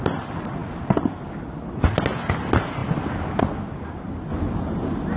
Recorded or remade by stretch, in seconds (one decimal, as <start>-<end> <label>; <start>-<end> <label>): 0.0-5.2 recorded